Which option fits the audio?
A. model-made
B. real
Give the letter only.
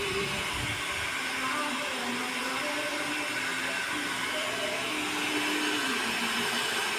B